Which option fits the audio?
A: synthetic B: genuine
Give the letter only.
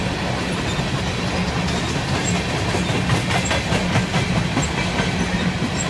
B